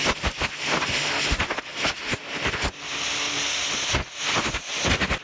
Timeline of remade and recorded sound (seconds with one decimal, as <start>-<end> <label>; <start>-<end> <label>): 0.0-5.2 recorded